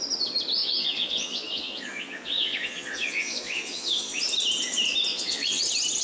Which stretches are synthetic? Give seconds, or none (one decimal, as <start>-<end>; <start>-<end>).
0.6-4.2; 5.1-5.6